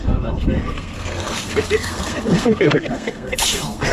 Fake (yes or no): yes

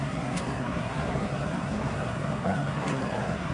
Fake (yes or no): yes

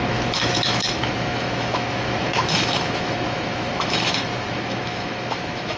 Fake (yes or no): yes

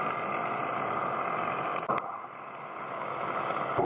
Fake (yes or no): no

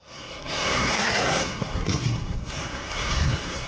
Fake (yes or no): yes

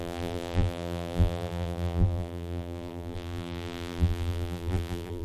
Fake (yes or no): yes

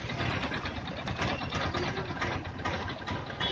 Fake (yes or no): no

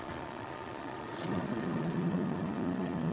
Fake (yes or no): yes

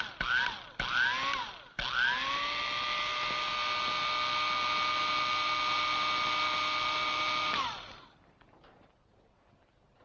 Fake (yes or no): no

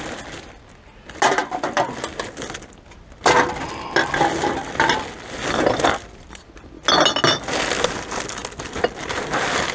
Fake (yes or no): no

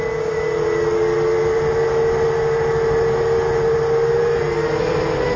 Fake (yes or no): no